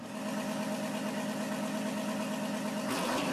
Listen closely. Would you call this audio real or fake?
real